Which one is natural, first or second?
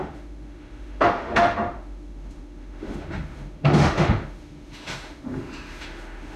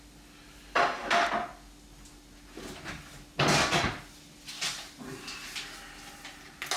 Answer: second